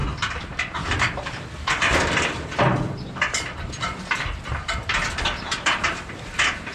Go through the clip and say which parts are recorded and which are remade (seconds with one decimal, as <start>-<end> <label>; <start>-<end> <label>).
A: 0.0-6.7 remade

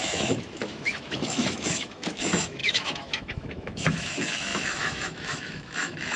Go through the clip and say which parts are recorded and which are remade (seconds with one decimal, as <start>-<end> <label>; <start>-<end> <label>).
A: 0.0-6.2 remade

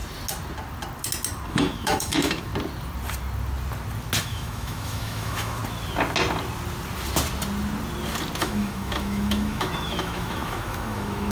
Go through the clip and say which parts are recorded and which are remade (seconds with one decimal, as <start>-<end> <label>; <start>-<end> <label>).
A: 0.0-1.5 recorded; 1.5-2.5 remade; 2.5-4.2 recorded; 4.2-5.6 remade; 5.6-8.4 recorded; 8.4-11.3 remade

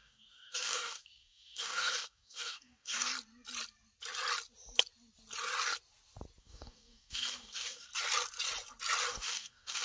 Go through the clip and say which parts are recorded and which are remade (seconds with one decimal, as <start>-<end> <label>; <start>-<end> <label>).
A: 0.0-3.1 remade; 3.1-6.4 recorded; 6.4-7.9 remade; 7.9-9.1 recorded; 9.1-9.8 remade

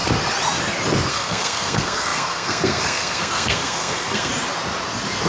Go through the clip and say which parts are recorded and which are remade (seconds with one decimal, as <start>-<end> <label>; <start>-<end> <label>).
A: 0.0-1.1 recorded; 1.1-4.3 remade; 4.3-5.3 recorded

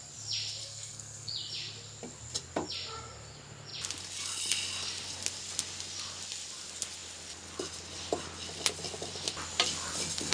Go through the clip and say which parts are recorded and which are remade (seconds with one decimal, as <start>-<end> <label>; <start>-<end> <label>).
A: 0.0-0.6 recorded; 0.6-1.3 remade; 1.3-10.3 recorded

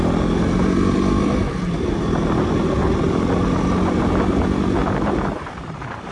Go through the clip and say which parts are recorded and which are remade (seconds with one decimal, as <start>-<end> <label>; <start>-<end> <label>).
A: 0.0-4.8 recorded; 4.8-6.1 remade